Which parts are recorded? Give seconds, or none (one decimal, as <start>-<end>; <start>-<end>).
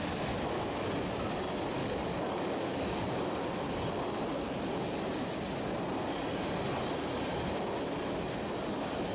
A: 0.0-1.8; 3.3-9.1